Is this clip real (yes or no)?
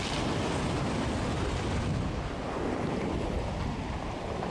yes